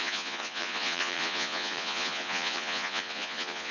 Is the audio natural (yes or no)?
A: no